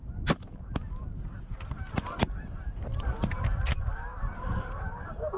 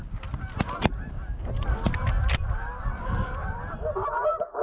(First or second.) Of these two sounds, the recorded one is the second